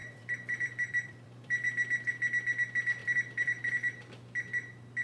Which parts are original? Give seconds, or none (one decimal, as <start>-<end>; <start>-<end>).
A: 2.1-3.0; 3.7-5.0